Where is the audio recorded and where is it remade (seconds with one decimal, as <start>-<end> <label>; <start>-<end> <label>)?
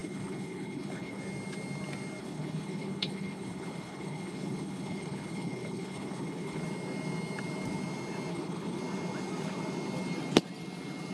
0.0-1.2 remade; 1.2-2.2 recorded; 2.2-6.6 remade; 6.6-8.3 recorded; 8.3-8.8 remade; 8.8-11.1 recorded